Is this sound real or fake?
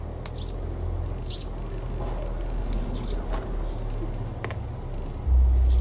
real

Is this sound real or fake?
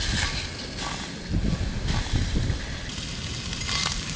real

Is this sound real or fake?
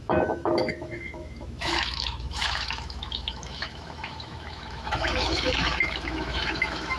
fake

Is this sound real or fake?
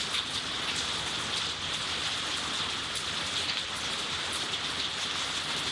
real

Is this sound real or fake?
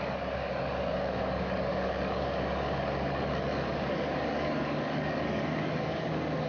fake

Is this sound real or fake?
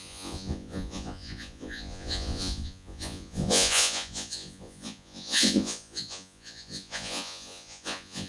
fake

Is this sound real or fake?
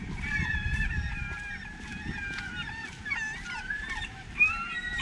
fake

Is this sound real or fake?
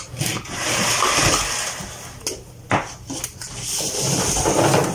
real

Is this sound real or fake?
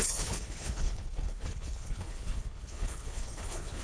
fake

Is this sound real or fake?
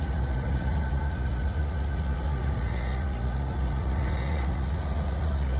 fake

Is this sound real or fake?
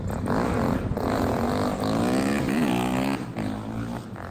real